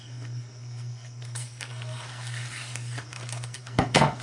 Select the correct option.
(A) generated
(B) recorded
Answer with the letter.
A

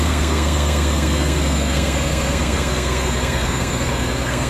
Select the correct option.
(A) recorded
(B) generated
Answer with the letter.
B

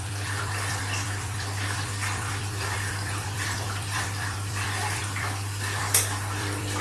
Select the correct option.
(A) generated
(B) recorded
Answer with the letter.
A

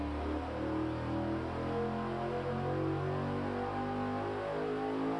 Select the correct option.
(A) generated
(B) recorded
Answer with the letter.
B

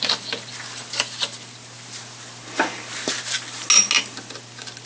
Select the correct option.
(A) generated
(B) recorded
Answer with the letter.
B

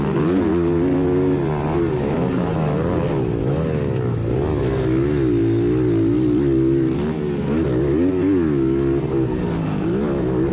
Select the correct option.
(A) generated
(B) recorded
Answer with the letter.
B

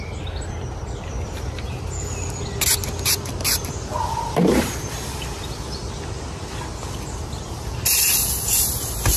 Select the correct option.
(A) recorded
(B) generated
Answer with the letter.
A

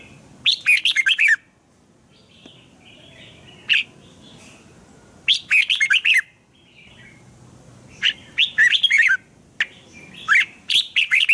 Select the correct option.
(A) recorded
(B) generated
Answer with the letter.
A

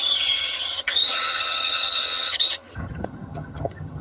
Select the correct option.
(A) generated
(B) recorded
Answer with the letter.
A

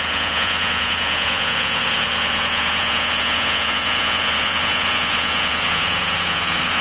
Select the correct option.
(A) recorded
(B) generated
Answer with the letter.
B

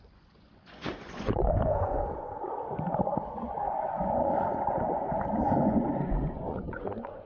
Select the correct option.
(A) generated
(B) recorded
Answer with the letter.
A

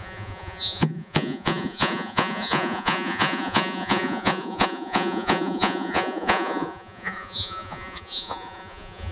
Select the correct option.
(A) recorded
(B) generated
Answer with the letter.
B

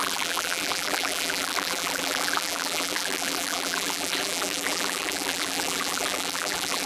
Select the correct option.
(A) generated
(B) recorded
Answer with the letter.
A